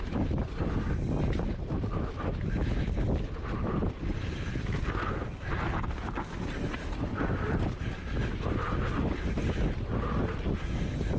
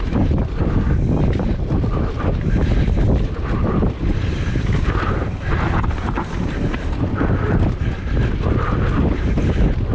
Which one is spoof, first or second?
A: second